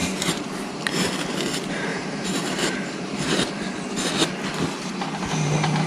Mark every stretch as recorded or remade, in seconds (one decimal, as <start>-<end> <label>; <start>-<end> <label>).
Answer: 0.0-0.8 remade; 0.8-1.9 recorded; 1.9-3.4 remade; 3.4-5.9 recorded